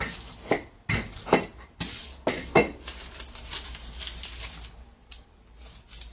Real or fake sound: real